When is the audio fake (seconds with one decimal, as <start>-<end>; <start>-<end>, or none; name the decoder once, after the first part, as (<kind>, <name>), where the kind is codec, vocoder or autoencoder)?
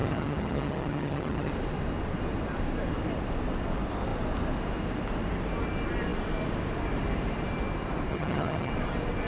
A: 0.0-1.5 (vocoder, HiFi-GAN); 8.1-8.7